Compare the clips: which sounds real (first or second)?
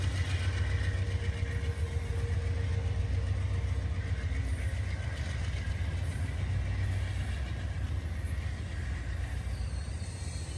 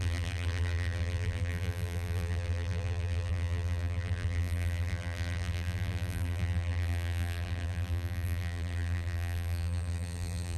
first